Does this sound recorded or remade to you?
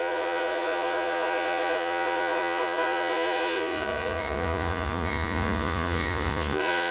remade